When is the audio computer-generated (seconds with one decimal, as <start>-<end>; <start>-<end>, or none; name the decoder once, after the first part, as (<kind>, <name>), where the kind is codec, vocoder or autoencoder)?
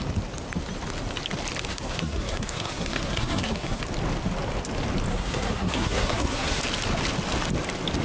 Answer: 1.7-3.8 (codec, SNAC); 5.1-6.6